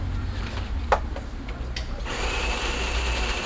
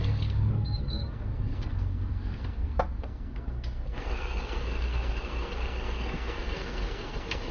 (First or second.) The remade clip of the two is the second